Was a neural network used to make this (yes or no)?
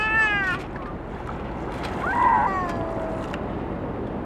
no